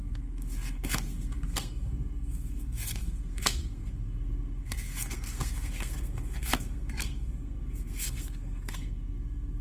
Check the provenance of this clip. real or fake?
fake